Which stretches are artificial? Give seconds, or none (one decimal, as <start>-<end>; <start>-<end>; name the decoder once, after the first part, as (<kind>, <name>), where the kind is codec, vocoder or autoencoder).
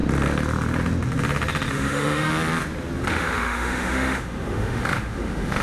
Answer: 1.7-2.3 (autoencoder, DAC-VAE); 3.1-5.6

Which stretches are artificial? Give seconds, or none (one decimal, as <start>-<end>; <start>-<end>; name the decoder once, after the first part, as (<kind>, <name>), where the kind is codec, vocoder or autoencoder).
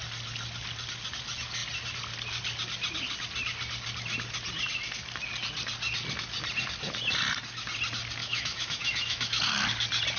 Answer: 8.2-9.4 (autoencoder, DAC-VAE)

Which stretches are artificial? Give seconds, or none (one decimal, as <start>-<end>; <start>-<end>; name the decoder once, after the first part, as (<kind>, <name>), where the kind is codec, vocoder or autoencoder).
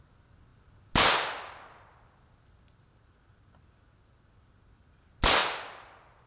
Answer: none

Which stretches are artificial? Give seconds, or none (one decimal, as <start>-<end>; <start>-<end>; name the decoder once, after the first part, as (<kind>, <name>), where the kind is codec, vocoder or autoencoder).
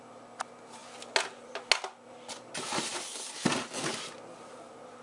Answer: none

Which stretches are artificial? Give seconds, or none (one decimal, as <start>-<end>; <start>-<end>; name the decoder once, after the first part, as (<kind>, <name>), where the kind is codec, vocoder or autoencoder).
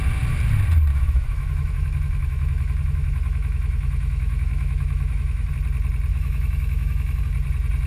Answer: 0.9-5.5 (autoencoder, DAC-VAE); 6.1-7.2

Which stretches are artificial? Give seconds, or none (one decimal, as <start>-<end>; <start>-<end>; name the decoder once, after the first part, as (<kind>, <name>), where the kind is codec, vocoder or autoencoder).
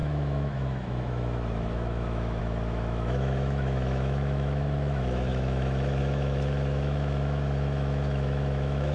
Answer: 0.0-8.9 (autoencoder, DAC-VAE)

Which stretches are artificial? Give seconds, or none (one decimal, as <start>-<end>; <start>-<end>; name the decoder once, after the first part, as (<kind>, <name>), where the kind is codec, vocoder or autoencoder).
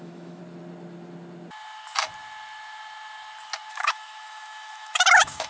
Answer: 0.0-0.4 (autoencoder, DAC-VAE); 3.7-5.5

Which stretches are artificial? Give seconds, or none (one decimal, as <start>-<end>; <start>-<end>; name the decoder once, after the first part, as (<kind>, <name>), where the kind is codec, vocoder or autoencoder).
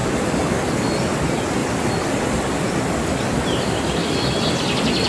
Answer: none